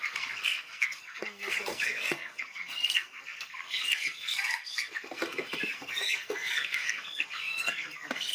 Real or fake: fake